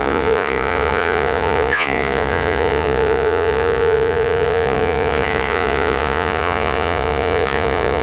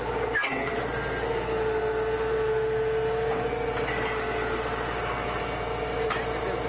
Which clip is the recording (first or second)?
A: second